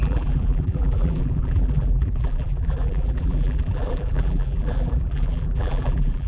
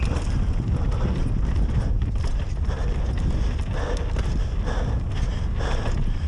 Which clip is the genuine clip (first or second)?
second